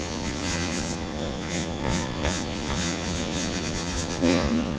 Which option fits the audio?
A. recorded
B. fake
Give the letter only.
B